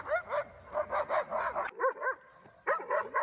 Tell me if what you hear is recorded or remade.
recorded